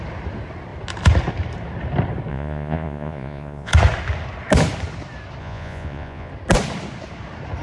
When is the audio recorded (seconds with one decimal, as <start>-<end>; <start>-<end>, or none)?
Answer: 0.0-2.3; 3.7-5.4; 6.3-7.6